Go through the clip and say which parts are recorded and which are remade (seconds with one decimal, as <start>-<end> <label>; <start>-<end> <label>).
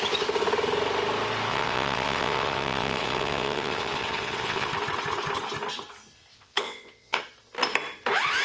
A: 0.0-1.5 recorded; 1.5-4.7 remade; 4.7-6.3 recorded; 6.3-7.2 remade; 7.2-8.4 recorded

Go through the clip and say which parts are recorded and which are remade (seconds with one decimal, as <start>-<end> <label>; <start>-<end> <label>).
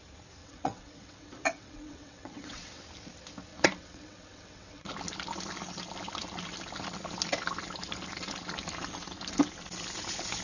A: 0.0-0.4 recorded; 0.4-2.8 remade; 2.8-3.5 recorded; 3.5-4.9 remade; 4.9-10.4 recorded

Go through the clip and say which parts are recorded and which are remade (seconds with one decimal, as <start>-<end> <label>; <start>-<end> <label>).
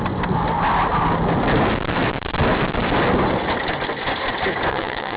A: 0.0-4.7 recorded; 4.7-5.2 remade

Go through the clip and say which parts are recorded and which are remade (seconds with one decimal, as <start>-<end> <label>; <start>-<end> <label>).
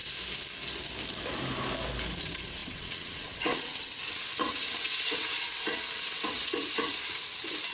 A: 0.0-2.2 recorded; 2.2-7.7 remade